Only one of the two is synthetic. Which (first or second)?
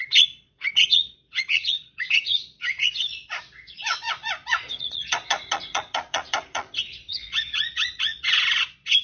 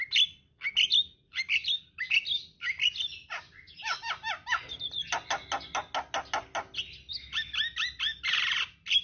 first